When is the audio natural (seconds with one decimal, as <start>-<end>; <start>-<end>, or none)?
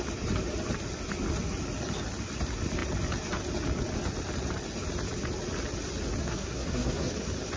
0.0-6.2; 7.1-7.6